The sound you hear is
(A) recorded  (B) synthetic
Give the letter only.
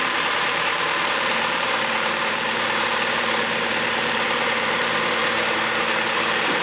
B